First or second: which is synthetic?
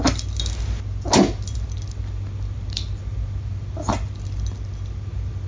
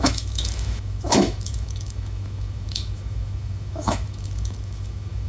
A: second